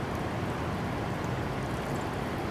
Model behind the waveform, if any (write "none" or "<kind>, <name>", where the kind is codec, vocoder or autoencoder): none